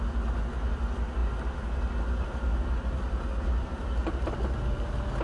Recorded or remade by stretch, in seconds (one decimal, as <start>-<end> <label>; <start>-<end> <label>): 0.0-5.2 recorded